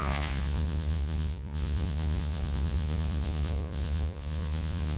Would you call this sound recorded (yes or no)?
no